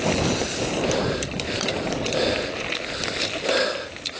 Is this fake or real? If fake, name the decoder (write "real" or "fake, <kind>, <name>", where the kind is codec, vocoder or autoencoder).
real